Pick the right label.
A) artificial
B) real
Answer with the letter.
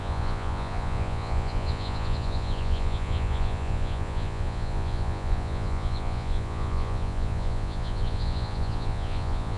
A